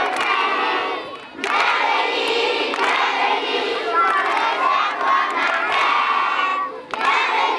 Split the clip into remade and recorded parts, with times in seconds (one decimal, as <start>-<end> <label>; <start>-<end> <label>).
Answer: 0.0-7.6 recorded